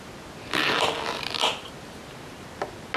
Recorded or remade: recorded